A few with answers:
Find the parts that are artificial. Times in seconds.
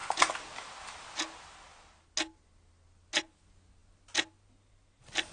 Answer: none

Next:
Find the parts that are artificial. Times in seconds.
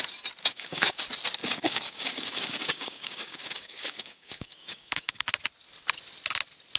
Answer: 0.4-0.9 (codec, DAC); 1.4-5.2